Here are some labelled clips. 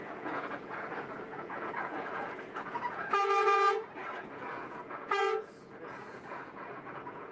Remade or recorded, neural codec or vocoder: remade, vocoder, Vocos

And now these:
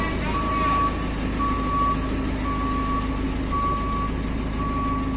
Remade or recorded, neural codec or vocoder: recorded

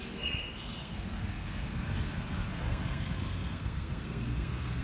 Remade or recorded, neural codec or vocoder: remade, codec, SNAC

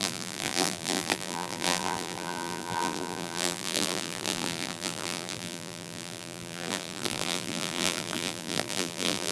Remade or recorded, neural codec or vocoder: remade, vocoder, BigVGAN v2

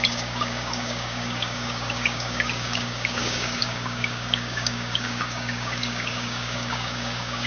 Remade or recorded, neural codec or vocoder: remade, codec, DAC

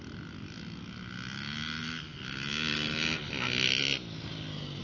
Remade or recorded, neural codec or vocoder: recorded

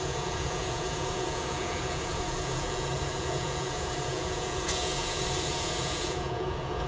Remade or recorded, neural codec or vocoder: remade, vocoder, Vocos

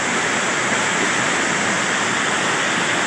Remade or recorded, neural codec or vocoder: recorded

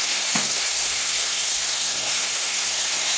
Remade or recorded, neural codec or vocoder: remade, codec, SNAC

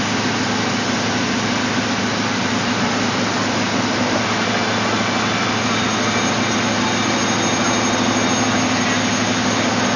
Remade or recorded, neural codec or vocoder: recorded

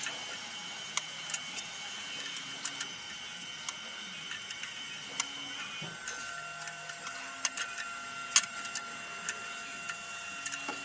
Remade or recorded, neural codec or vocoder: recorded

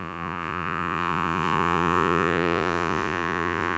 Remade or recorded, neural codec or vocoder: remade, vocoder, Vocos